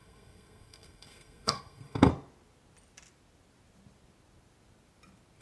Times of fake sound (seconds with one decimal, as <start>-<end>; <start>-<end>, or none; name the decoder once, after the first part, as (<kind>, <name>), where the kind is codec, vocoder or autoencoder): 0.0-2.1 (codec, SNAC)